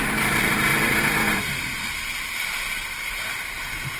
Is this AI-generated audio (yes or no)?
yes